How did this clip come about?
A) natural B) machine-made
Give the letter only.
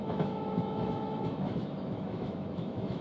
B